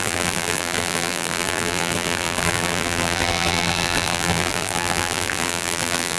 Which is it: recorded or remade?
remade